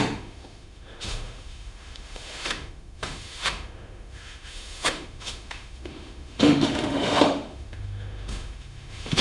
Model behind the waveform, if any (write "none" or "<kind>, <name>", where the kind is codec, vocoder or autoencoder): autoencoder, DAC-VAE